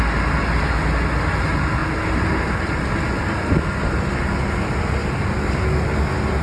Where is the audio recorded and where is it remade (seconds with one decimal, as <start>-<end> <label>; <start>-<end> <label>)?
0.0-6.4 recorded